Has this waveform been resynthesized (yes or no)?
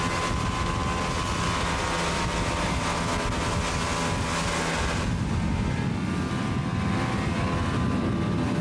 no